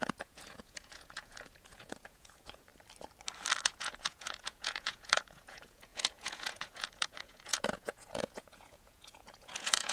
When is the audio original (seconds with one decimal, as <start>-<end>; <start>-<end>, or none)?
2.7-3.6